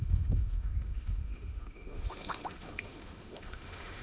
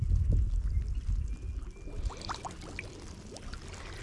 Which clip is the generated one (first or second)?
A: first